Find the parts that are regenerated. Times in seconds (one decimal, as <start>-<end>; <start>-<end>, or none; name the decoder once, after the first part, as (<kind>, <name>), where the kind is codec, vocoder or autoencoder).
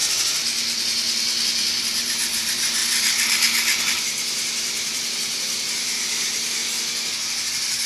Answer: 1.8-2.8 (vocoder, BigVGAN v2); 3.8-6.6; 7.5-7.9